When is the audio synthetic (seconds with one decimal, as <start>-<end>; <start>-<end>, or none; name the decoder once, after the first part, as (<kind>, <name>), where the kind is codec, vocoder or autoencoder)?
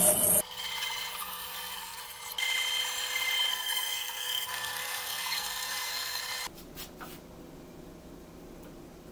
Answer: 1.2-2.0 (codec, SNAC); 3.5-6.2